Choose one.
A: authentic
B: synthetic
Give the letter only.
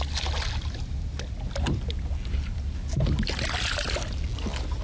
A